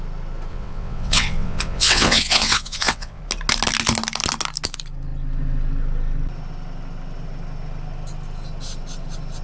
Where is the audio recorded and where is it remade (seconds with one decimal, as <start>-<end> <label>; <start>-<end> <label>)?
0.0-0.5 recorded; 0.5-3.2 remade; 3.2-9.4 recorded